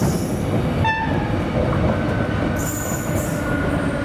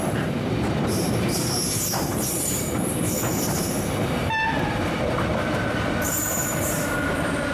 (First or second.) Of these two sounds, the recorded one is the first